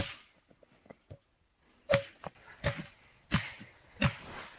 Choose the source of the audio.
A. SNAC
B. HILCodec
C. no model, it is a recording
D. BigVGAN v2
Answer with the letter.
C